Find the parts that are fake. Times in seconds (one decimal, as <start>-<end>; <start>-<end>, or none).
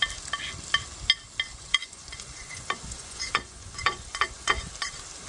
1.5-4.7